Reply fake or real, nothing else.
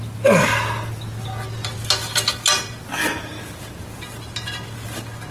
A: real